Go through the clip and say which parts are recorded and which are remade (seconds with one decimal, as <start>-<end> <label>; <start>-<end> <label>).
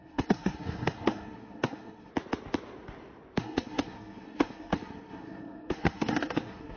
0.0-2.1 remade; 2.1-3.4 recorded; 3.4-6.8 remade